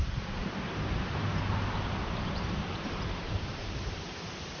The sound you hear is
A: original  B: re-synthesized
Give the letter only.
B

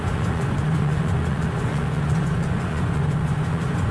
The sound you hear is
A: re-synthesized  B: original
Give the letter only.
A